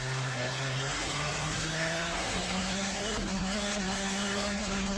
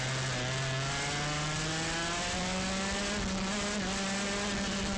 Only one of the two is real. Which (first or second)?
second